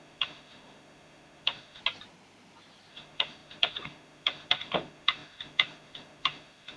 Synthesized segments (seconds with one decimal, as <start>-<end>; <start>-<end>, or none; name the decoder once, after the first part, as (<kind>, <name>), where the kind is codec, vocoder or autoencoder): 0.0-1.8 (autoencoder, DAC-VAE); 2.9-6.8